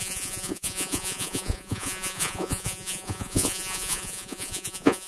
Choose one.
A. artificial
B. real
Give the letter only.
A